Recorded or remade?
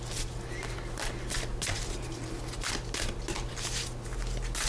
recorded